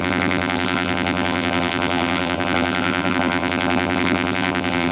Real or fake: fake